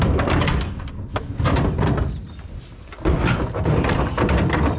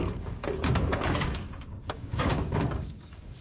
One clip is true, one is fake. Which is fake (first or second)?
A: second